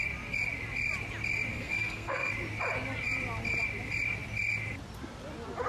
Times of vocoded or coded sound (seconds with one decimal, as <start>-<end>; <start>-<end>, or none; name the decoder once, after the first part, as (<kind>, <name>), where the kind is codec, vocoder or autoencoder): 1.5-2.3 (codec, SNAC)